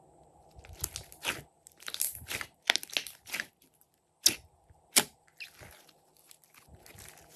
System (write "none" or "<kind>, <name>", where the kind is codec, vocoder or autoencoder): none